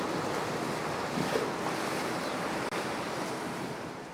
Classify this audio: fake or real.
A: real